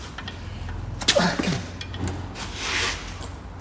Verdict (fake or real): real